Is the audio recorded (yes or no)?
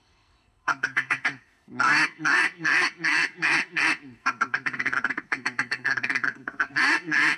no